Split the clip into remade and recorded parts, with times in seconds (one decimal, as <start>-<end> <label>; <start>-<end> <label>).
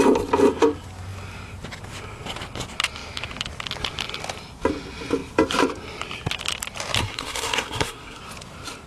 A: 0.0-7.0 recorded; 7.0-8.2 remade; 8.2-8.9 recorded